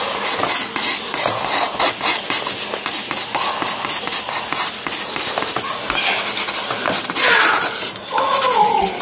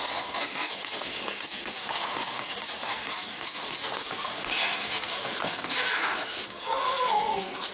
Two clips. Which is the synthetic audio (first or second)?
second